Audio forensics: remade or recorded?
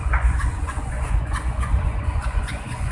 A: remade